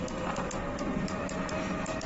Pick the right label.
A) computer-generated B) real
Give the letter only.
B